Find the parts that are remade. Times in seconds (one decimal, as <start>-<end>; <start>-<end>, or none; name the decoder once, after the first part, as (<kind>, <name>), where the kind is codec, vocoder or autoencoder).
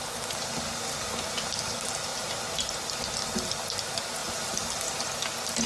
none